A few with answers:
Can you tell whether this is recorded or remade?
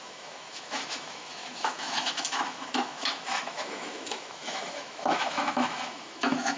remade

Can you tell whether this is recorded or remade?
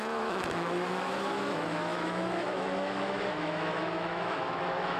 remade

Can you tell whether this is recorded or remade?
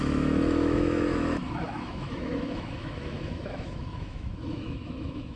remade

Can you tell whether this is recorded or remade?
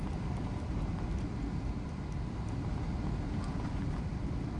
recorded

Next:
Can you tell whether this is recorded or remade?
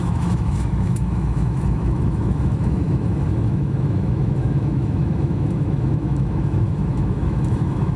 remade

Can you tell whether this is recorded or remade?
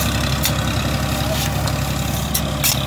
recorded